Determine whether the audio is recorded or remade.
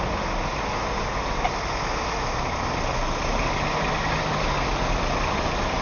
recorded